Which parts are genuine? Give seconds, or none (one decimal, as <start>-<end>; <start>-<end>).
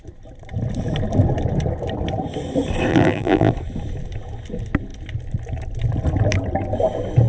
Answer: 0.0-2.9; 3.5-7.3